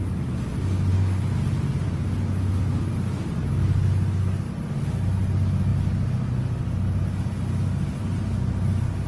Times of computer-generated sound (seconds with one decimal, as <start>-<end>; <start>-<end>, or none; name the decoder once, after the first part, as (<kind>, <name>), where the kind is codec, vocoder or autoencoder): none